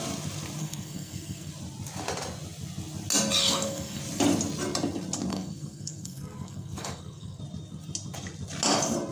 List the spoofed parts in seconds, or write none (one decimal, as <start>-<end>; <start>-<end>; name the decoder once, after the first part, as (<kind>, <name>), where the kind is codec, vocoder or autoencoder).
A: 0.6-1.5 (codec, SNAC); 3.4-4.0; 5.3-7.4